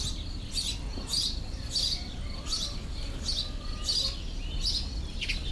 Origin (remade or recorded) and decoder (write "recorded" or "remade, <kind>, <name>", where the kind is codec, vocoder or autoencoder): recorded